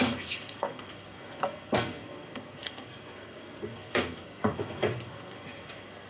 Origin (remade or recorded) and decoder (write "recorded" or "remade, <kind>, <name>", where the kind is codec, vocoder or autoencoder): remade, codec, SNAC